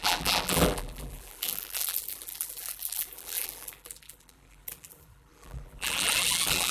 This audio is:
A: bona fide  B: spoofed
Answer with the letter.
B